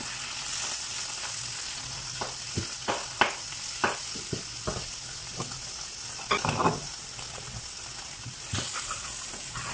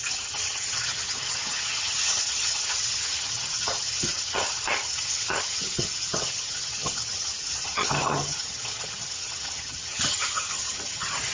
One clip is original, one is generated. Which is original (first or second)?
first